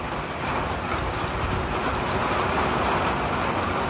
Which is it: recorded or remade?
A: recorded